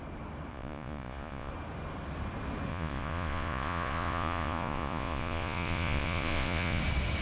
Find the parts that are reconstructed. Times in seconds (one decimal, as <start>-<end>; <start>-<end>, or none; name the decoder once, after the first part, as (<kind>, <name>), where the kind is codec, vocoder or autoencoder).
0.5-1.5 (vocoder, Vocos); 2.7-6.8